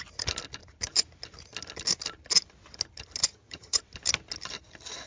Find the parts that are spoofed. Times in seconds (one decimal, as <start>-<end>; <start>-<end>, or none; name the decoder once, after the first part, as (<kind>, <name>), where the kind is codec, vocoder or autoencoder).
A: 3.3-3.8 (vocoder, HiFi-GAN)